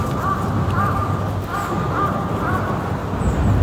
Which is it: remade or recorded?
recorded